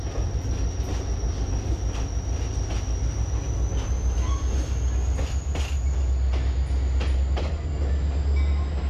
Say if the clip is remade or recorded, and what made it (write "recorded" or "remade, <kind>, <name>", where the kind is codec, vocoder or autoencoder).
recorded